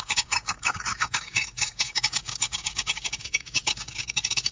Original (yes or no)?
no